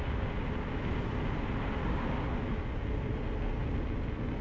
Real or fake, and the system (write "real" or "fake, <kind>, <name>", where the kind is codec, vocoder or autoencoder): real